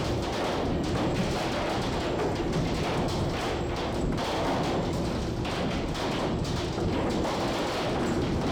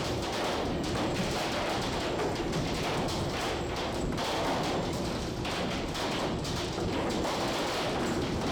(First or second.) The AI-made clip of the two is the second